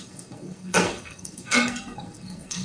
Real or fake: fake